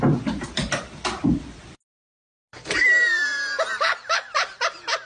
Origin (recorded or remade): recorded